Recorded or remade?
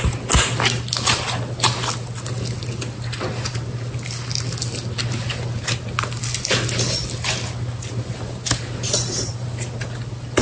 recorded